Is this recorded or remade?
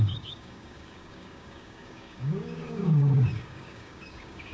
remade